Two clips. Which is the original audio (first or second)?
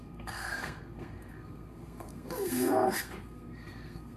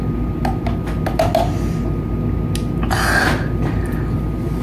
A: second